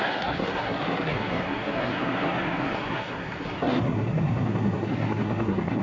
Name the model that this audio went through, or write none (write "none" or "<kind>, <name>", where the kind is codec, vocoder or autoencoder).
codec, SNAC